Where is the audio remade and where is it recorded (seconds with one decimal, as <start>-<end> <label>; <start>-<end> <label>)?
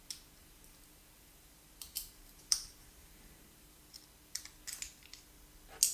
0.0-0.4 recorded; 0.4-3.9 remade; 3.9-5.9 recorded